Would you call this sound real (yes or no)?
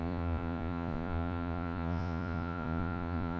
no